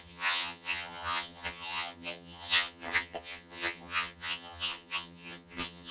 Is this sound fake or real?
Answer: fake